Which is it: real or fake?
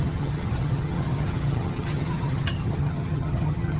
fake